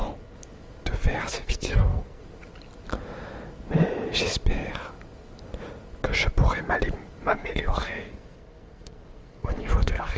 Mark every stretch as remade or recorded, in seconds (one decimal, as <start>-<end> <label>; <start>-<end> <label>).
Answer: 0.0-1.3 recorded; 1.3-2.2 remade; 2.2-7.3 recorded; 7.3-10.2 remade